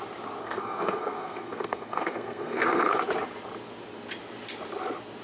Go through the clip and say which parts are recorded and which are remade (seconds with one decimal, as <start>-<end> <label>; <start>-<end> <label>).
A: 0.0-0.4 recorded; 0.4-3.0 remade; 3.0-5.2 recorded